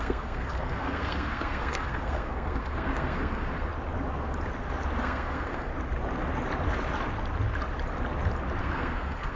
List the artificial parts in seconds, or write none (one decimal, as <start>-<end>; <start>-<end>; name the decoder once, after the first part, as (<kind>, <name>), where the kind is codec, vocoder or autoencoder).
0.0-3.7 (codec, SNAC); 5.0-5.7; 8.6-9.4